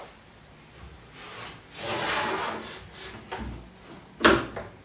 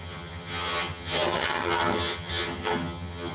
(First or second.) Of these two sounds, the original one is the first